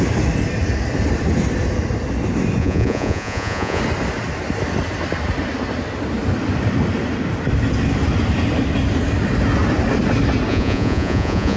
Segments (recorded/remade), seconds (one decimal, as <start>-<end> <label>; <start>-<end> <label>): 0.0-2.6 recorded; 2.6-3.8 remade; 3.8-10.5 recorded; 10.5-11.6 remade